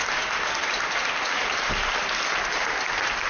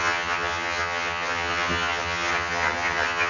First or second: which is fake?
second